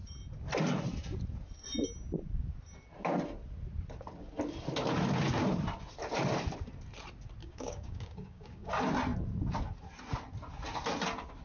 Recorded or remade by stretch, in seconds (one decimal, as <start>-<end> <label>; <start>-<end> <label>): 0.0-7.4 recorded; 7.4-8.7 remade; 8.7-11.4 recorded

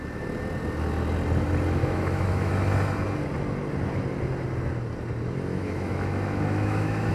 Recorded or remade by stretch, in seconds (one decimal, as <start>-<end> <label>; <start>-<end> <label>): 0.0-1.8 recorded; 1.8-2.5 remade; 2.5-5.5 recorded; 5.5-7.1 remade

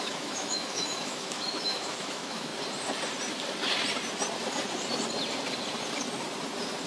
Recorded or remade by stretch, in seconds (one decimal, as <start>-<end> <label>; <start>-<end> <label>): 0.0-2.5 remade; 2.5-6.9 recorded

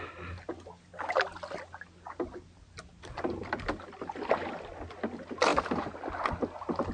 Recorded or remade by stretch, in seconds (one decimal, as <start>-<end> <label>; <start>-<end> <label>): 0.0-6.9 recorded